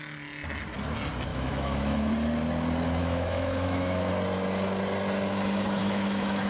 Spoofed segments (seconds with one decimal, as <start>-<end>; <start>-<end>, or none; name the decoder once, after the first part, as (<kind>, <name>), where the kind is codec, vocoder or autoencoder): 1.3-2.1 (autoencoder, DAC-VAE); 3.0-4.1; 5.8-6.5